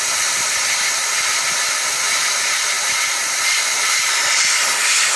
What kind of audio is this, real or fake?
real